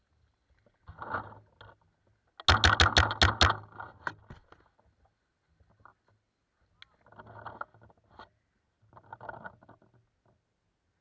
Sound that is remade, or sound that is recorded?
recorded